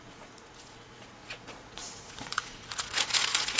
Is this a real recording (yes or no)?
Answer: no